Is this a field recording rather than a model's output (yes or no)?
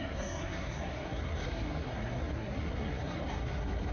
no